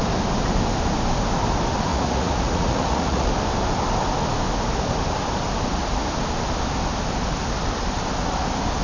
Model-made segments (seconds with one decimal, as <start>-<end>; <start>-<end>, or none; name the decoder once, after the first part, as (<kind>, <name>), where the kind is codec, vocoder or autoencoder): 1.9-3.3 (vocoder, Vocos)